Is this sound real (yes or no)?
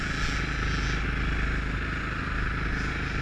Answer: yes